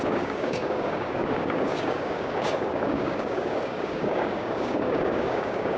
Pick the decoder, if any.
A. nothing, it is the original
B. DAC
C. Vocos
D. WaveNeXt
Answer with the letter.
B